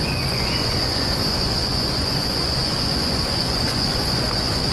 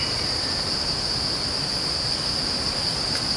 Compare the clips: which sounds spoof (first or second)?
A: first